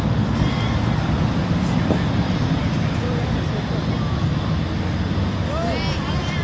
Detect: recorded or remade recorded